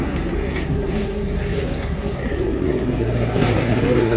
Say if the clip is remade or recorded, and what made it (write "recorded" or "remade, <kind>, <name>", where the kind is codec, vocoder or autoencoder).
remade, codec, SNAC